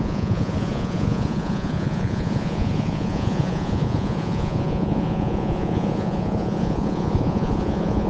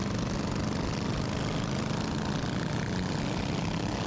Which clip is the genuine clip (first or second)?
second